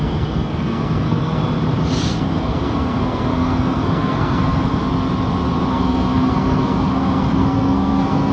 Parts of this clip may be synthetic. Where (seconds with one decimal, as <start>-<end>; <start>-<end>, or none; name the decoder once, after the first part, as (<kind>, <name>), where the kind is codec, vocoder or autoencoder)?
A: 0.0-1.4 (codec, SNAC); 2.0-4.8; 5.7-8.3